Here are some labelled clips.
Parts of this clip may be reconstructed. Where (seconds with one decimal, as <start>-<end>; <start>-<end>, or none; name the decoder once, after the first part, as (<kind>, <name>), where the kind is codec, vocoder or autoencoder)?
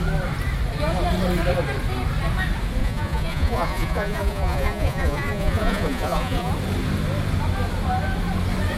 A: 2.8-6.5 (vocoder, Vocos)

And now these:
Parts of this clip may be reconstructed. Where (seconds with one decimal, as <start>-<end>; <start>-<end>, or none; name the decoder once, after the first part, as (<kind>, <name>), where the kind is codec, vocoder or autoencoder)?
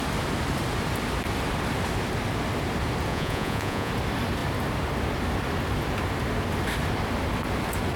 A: 3.1-3.9 (vocoder, Vocos)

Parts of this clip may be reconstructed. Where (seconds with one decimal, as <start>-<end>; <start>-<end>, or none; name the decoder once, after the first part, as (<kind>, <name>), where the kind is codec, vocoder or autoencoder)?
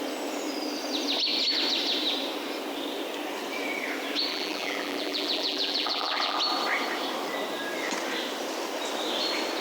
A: 4.3-6.4 (vocoder, BigVGAN v2)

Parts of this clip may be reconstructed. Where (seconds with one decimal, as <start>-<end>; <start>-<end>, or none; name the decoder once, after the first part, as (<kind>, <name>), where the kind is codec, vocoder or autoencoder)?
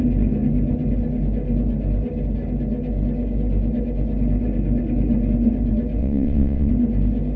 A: 6.0-6.7 (vocoder, WaveNeXt)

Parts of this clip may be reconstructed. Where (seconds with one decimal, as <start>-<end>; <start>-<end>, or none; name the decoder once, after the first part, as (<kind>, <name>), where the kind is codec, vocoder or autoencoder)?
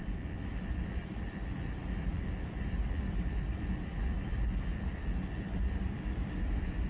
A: 0.0-6.9 (vocoder, BigVGAN v2)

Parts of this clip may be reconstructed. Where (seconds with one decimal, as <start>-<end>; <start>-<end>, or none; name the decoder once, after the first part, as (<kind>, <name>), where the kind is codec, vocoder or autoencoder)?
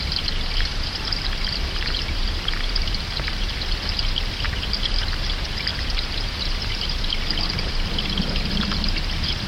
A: 0.7-3.5 (vocoder, BigVGAN v2); 5.7-7.1